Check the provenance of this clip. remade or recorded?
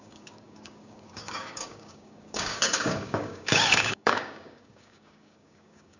remade